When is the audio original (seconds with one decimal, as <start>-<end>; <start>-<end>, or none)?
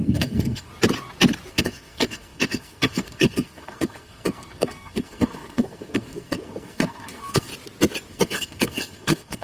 0.7-1.5; 7.5-8.1